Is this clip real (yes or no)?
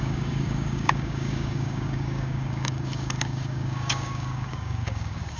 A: no